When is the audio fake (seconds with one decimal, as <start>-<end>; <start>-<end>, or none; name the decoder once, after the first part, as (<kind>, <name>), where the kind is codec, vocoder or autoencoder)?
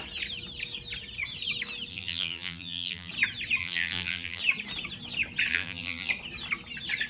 1.9-3.1 (vocoder, BigVGAN v2); 3.6-4.4; 5.5-6.1